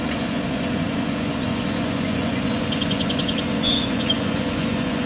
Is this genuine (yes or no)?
no